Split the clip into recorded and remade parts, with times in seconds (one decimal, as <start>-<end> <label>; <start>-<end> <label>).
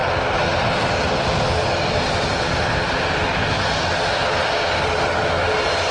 0.0-5.9 recorded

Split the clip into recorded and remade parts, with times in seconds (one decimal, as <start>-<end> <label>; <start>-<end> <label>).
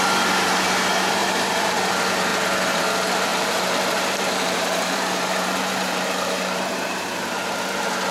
0.0-1.2 recorded; 1.2-1.9 remade; 1.9-2.3 recorded; 2.3-2.8 remade; 2.8-3.3 recorded; 3.3-8.1 remade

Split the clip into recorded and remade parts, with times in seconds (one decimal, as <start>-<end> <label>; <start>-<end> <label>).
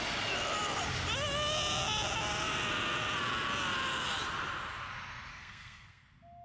0.0-5.3 recorded; 5.3-6.0 remade; 6.0-6.4 recorded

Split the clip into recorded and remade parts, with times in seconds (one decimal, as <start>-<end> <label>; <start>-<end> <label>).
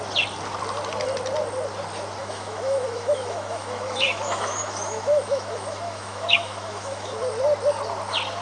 0.0-2.2 recorded; 2.2-7.2 remade; 7.2-8.4 recorded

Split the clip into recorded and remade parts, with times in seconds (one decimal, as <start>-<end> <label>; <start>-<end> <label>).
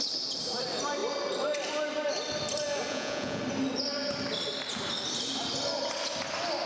0.0-2.9 recorded; 2.9-3.4 remade; 3.4-6.7 recorded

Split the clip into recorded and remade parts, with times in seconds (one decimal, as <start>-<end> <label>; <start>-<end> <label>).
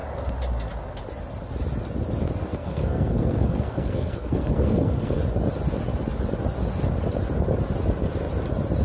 0.0-2.5 recorded; 2.5-5.2 remade; 5.2-8.8 recorded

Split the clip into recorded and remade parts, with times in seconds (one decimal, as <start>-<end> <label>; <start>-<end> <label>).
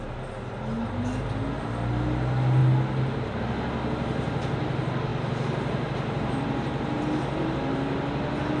0.0-5.1 recorded; 5.1-7.0 remade; 7.0-8.6 recorded